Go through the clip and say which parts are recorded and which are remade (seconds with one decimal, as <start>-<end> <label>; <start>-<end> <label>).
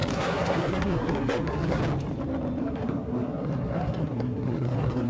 0.0-1.8 remade; 1.8-2.6 recorded; 2.6-5.1 remade